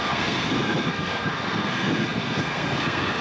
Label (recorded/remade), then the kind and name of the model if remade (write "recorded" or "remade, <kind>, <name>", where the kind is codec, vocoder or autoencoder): remade, codec, SNAC